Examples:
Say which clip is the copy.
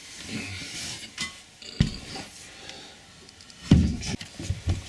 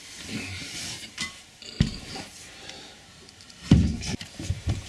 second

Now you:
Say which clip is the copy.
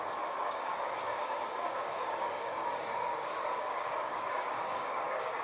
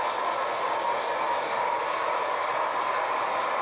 first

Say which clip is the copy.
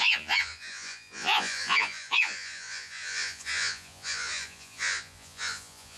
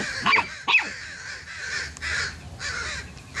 first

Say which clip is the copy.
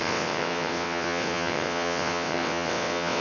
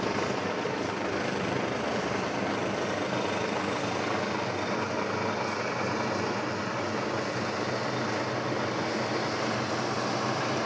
first